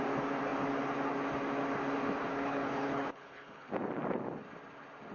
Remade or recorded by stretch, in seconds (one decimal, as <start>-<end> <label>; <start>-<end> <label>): 0.0-2.3 recorded; 2.3-3.7 remade; 3.7-5.1 recorded